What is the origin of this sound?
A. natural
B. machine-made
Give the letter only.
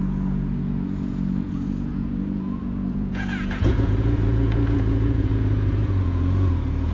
B